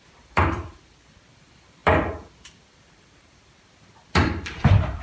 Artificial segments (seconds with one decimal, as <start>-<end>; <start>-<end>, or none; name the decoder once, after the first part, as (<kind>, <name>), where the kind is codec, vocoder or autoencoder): 0.0-5.0 (vocoder, BigVGAN v2)